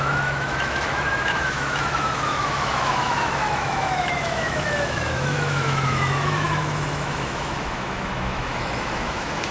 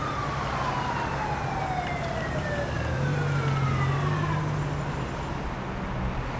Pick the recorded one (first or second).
second